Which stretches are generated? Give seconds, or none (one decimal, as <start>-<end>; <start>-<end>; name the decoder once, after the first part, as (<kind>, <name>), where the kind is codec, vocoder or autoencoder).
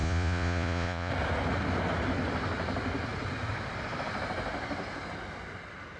0.0-1.1 (vocoder, Vocos)